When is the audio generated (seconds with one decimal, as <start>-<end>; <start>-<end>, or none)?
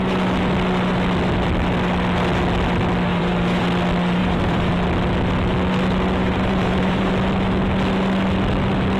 3.1-3.6; 4.2-4.7; 6.2-7.1